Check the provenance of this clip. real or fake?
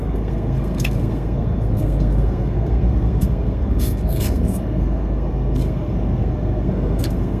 fake